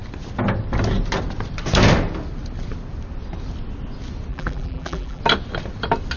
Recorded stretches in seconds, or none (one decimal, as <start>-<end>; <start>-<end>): 0.0-4.3; 5.2-6.2